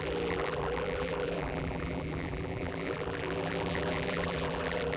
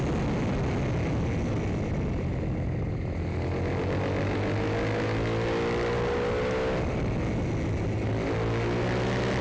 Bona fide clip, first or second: second